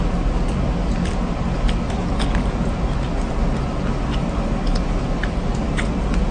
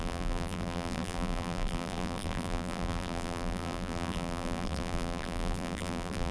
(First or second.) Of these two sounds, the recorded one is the first